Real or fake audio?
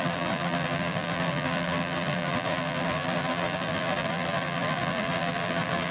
fake